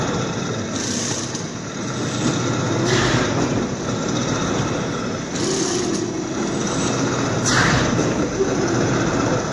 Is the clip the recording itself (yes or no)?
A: yes